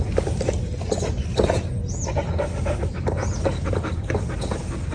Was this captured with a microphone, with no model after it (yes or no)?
yes